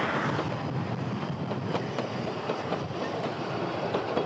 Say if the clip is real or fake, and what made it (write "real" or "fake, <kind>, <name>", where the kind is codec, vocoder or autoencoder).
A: real